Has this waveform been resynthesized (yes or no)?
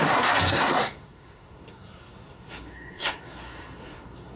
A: yes